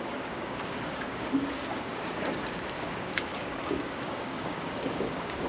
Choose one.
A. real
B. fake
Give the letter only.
B